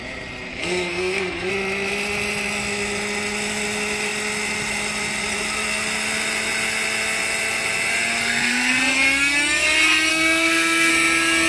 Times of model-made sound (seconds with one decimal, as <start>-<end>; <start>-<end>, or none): 0.5-1.5; 8.2-8.8; 10.1-10.9

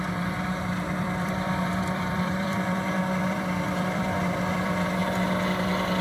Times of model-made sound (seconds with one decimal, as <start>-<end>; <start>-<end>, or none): 0.0-5.0

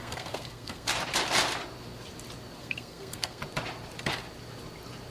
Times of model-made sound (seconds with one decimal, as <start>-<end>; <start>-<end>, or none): 0.0-0.9; 2.6-3.4

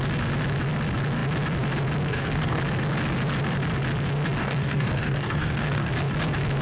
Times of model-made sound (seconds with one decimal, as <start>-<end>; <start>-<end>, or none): 2.1-2.6; 4.4-5.9

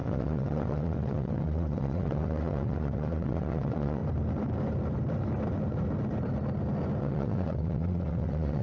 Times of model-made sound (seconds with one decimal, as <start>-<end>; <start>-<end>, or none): 0.0-4.0; 7.0-8.6

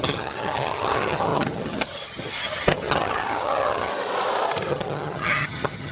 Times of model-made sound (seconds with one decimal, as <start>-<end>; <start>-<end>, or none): 0.0-3.9; 4.7-5.9